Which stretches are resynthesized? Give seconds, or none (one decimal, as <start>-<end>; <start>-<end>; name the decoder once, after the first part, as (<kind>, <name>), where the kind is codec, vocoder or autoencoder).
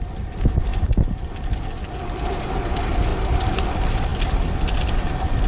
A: none